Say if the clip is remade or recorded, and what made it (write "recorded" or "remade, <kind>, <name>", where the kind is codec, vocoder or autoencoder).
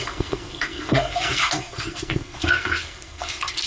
remade, codec, SNAC